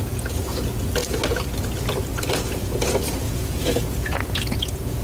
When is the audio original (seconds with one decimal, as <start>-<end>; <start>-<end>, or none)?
1.0-2.1